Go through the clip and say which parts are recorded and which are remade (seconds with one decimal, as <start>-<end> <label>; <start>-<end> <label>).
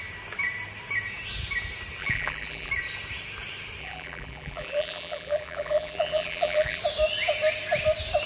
0.0-2.0 recorded; 2.0-2.7 remade; 2.7-3.8 recorded; 3.8-6.8 remade; 6.8-8.3 recorded